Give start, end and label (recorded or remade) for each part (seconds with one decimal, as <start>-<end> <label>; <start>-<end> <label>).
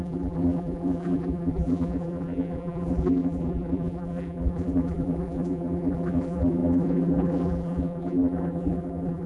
0.0-9.3 remade